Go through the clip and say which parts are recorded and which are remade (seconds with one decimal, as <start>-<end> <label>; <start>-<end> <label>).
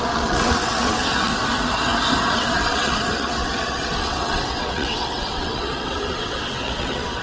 0.0-1.3 remade; 1.3-2.3 recorded; 2.3-7.2 remade